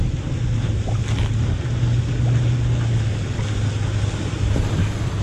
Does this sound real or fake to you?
real